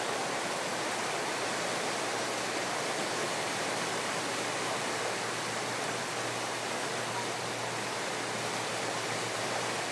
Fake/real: real